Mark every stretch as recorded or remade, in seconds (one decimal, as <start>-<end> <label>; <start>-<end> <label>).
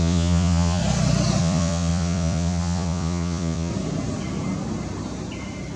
0.0-0.8 remade; 0.8-1.4 recorded; 1.4-3.7 remade; 3.7-5.8 recorded